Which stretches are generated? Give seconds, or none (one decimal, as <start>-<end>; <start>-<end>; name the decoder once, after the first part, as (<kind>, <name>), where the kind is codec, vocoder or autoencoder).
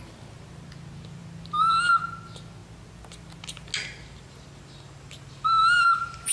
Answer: none